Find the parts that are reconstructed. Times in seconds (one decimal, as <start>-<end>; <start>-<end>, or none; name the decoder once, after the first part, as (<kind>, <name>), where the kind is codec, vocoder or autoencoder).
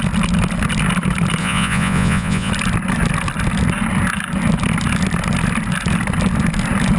1.4-2.5 (vocoder, Vocos)